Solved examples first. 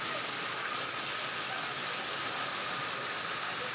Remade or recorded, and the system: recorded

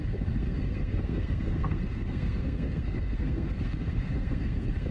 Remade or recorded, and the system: remade, codec, SNAC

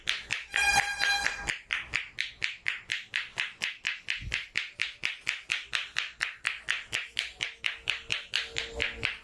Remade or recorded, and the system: recorded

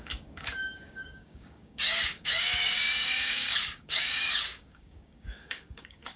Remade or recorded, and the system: remade, codec, DAC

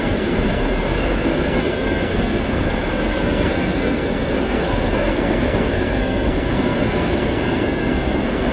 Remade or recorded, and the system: remade, codec, SNAC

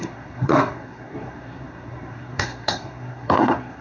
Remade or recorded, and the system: remade, codec, SNAC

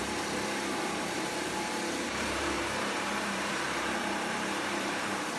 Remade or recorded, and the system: remade, vocoder, BigVGAN v2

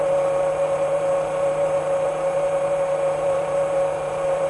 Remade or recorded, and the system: remade, vocoder, BigVGAN v2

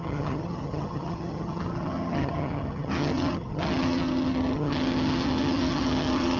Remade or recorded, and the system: remade, vocoder, HiFi-GAN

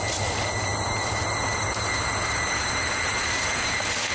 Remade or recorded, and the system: recorded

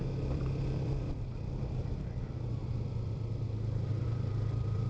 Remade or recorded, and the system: remade, vocoder, BigVGAN v2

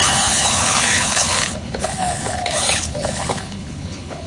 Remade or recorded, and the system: remade, codec, HILCodec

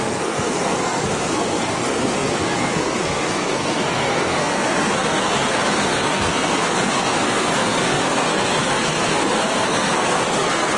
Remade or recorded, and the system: remade, codec, SNAC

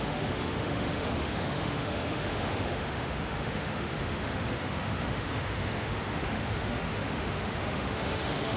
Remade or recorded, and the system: remade, autoencoder, DAC-VAE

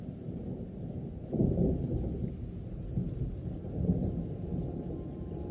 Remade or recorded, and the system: recorded